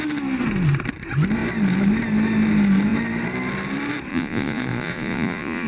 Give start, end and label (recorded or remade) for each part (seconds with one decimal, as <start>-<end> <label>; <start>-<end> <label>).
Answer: 0.0-4.1 recorded; 4.1-5.7 remade